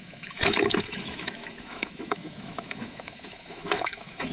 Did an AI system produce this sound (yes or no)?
yes